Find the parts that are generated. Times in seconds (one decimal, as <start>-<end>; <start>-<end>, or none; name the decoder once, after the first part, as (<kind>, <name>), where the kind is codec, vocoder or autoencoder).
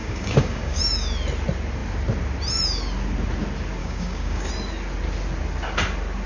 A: 0.0-0.8 (codec, DAC); 3.8-4.5